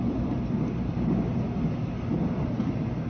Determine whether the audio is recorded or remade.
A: recorded